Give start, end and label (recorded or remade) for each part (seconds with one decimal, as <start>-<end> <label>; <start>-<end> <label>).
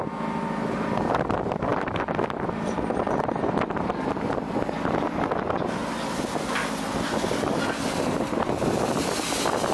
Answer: 0.0-5.8 recorded; 5.8-6.5 remade; 6.5-9.7 recorded